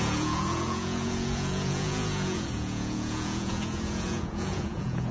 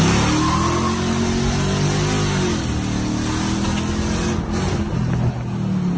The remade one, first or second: first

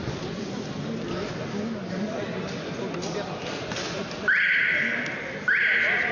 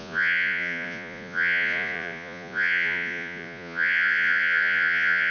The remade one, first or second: second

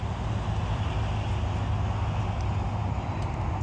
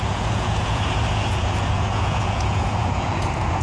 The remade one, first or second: second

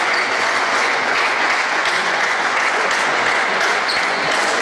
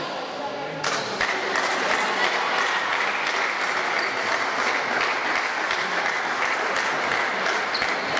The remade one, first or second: first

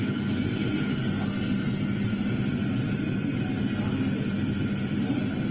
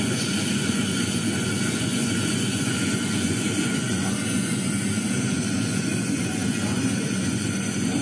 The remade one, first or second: second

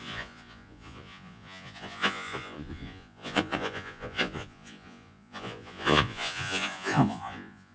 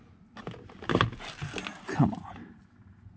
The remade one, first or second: first